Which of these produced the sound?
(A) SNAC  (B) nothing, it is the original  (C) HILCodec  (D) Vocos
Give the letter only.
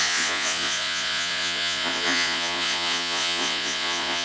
D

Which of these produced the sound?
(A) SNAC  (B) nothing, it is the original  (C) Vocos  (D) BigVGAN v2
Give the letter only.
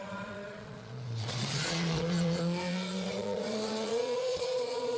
C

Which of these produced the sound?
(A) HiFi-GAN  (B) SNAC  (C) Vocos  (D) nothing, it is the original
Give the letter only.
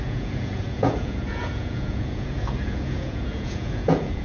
C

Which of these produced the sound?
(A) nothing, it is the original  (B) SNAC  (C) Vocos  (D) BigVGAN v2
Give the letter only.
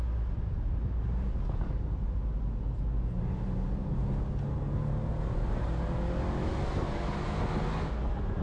A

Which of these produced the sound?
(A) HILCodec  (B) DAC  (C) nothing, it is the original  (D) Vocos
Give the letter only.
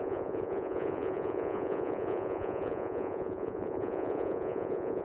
D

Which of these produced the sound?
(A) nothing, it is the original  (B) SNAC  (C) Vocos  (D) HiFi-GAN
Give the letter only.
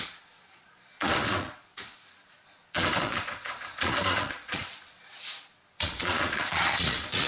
C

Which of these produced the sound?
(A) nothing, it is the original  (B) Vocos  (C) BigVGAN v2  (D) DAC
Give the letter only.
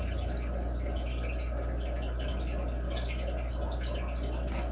A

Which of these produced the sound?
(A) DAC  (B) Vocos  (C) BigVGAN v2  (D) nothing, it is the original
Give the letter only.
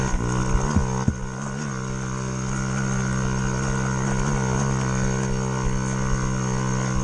D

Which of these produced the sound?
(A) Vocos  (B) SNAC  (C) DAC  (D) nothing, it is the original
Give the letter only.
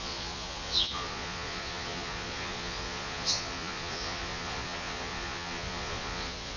A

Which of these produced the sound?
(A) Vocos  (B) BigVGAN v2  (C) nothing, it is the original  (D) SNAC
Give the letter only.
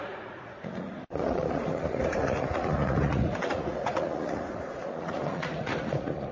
A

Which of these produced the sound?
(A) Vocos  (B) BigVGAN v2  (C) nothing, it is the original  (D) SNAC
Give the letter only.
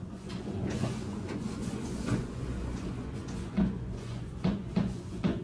A